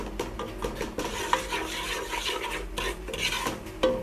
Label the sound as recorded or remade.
recorded